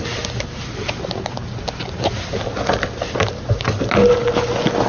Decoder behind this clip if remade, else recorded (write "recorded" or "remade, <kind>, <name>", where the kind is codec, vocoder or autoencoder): recorded